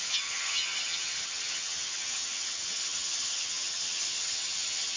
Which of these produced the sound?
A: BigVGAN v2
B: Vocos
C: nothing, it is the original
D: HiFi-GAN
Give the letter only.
D